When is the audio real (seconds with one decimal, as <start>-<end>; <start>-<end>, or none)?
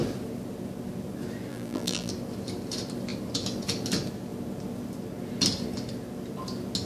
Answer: 0.0-1.5; 2.1-6.8